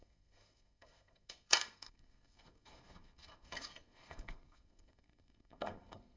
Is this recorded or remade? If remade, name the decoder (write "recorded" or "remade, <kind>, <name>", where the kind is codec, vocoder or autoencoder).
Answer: remade, codec, SNAC